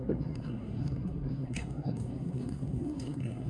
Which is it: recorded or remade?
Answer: remade